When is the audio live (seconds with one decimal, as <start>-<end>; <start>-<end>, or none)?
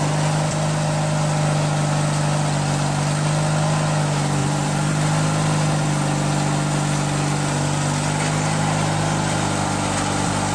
0.0-4.4; 4.9-10.5